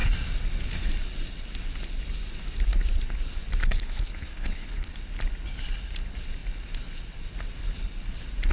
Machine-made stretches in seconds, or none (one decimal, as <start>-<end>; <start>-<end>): 3.6-4.9